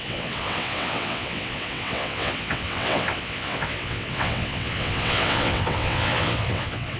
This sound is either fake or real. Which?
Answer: fake